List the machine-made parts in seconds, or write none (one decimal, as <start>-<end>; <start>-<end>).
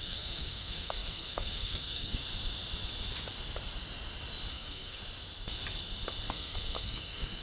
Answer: 0.0-2.3; 4.5-5.0; 6.3-7.4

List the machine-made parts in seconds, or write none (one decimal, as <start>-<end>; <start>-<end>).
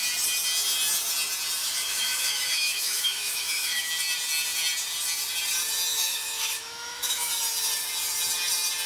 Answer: 1.6-3.9; 5.9-7.3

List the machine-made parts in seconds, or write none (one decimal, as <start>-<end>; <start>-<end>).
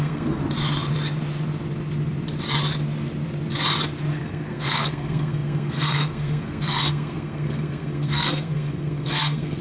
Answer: 0.0-0.4; 4.1-9.6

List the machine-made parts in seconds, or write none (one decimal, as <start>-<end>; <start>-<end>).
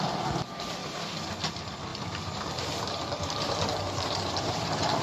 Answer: 0.8-1.3; 1.9-5.0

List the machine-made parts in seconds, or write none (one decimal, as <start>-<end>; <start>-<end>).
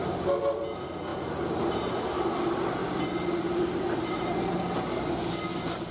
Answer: 1.1-1.9; 2.8-5.1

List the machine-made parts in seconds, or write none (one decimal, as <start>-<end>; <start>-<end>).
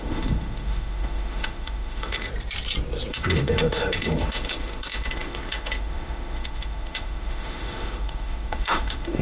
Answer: 0.0-2.3; 3.1-9.2